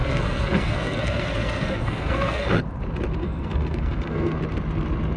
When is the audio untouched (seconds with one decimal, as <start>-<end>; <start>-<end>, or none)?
2.6-3.2; 4.4-5.2